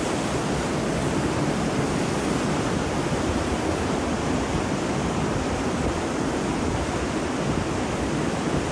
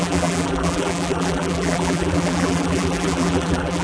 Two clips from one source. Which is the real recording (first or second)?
first